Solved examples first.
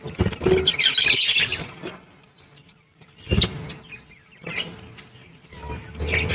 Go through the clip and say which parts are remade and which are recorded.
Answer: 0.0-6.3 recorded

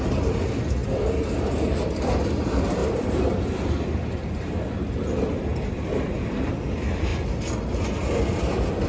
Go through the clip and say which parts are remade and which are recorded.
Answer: 0.0-0.8 recorded; 0.8-1.9 remade; 1.9-2.8 recorded; 2.8-6.5 remade; 6.5-8.9 recorded

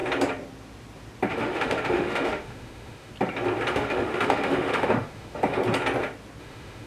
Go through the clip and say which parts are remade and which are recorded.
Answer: 0.0-1.3 recorded; 1.3-3.1 remade; 3.1-3.7 recorded; 3.7-5.6 remade; 5.6-6.4 recorded; 6.4-6.9 remade

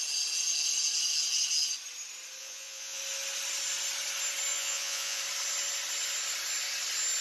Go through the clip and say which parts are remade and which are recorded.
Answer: 0.0-2.4 recorded; 2.4-3.0 remade; 3.0-4.5 recorded; 4.5-5.2 remade; 5.2-7.2 recorded

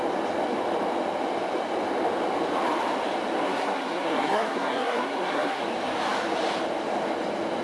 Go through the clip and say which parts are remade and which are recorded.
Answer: 0.0-3.4 recorded; 3.4-5.6 remade; 5.6-7.6 recorded